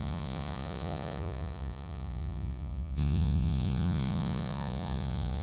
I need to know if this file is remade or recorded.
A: remade